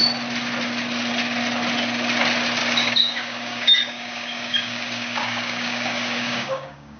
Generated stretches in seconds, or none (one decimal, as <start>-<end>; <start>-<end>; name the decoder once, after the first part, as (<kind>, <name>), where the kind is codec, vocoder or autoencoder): 2.6-7.0 (codec, DAC)

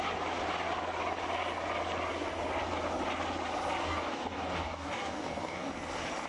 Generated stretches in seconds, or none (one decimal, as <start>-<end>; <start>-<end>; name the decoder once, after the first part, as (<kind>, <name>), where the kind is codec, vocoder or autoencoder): 3.8-5.7 (codec, DAC)

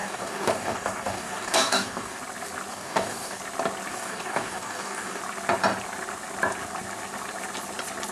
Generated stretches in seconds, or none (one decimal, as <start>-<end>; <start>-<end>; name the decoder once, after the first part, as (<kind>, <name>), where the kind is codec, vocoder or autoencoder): 0.0-2.2 (codec, DAC); 2.7-3.4; 3.9-5.2